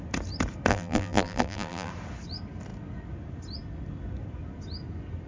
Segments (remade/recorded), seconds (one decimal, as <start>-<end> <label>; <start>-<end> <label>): 0.0-0.7 recorded; 0.7-1.9 remade; 1.9-5.3 recorded